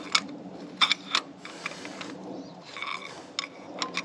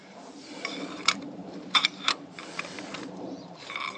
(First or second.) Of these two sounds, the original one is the first